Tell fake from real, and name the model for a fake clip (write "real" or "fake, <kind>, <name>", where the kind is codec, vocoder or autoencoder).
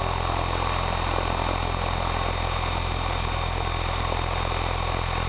real